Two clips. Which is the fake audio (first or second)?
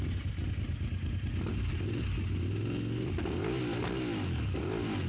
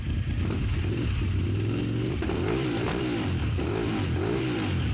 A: second